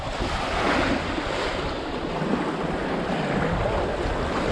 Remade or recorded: recorded